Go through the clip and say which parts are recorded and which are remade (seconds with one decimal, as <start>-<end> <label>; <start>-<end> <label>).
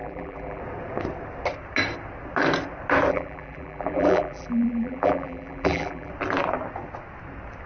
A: 0.0-0.6 remade; 0.6-3.1 recorded; 3.1-6.1 remade; 6.1-7.7 recorded